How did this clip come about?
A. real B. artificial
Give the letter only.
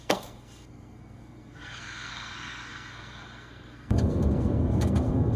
B